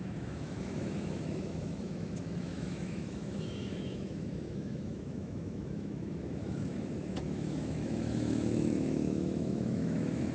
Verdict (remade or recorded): remade